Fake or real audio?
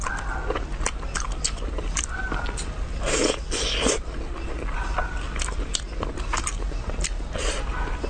real